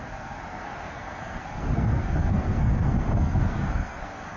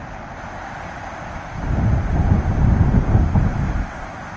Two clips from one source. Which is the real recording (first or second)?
second